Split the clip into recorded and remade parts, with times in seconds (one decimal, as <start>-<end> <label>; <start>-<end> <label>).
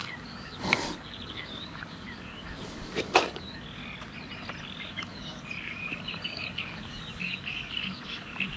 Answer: 0.0-3.8 remade; 3.8-4.6 recorded; 4.6-8.6 remade